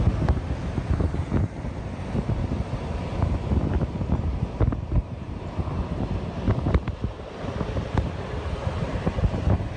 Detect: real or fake fake